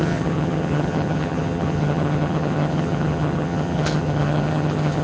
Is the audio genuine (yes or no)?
no